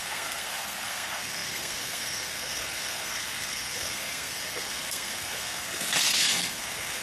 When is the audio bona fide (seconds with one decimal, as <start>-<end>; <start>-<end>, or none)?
none